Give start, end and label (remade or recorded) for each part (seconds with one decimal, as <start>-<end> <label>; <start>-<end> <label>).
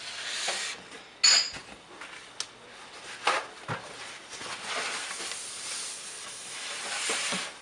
0.0-6.2 recorded; 6.2-6.7 remade; 6.7-7.6 recorded